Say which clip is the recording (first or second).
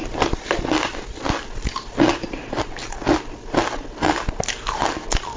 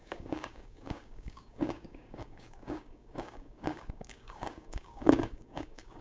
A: first